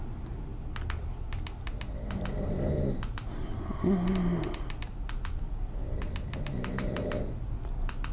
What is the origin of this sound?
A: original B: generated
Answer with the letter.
A